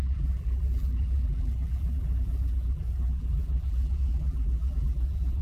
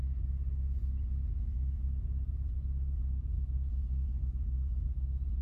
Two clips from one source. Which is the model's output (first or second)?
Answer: first